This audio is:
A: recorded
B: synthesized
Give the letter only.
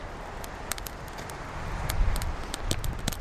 A